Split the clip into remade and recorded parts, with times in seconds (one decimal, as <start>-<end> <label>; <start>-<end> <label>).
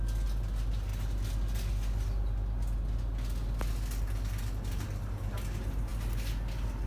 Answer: 0.0-6.9 recorded